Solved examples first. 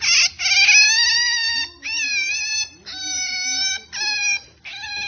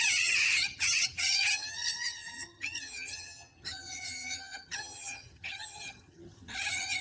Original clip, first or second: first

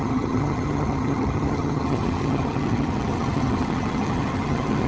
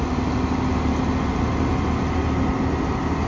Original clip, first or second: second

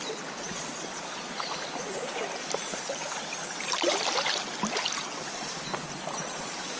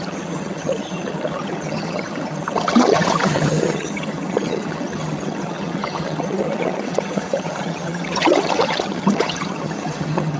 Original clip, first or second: first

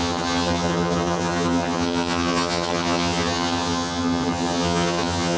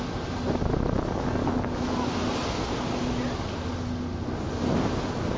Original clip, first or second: second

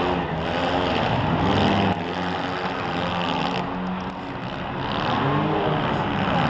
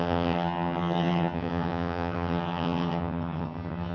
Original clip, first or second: first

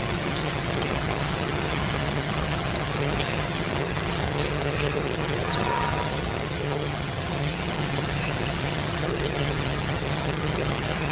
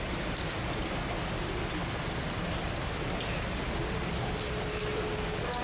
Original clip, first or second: second